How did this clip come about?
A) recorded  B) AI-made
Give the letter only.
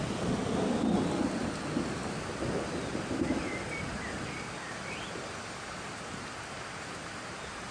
A